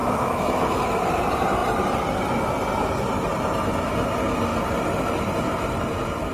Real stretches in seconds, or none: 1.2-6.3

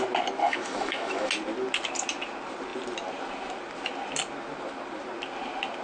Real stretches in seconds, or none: 0.0-0.4; 1.3-5.8

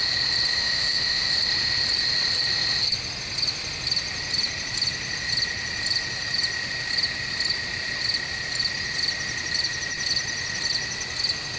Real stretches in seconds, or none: 0.0-0.5; 1.3-11.6

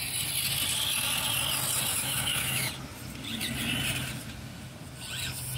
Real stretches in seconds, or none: 0.0-1.9; 2.7-5.6

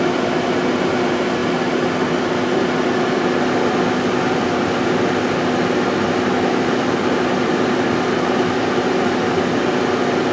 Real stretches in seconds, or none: 0.0-10.3

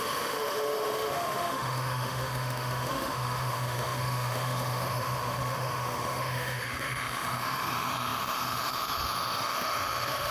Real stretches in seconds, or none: none

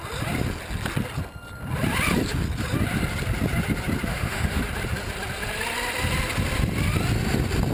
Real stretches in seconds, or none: 0.0-4.1; 4.6-7.7

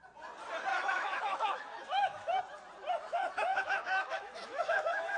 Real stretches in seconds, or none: 0.0-0.7; 2.4-3.5